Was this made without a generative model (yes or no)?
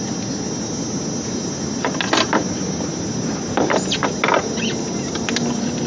yes